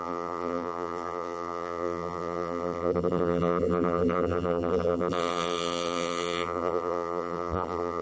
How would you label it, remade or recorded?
remade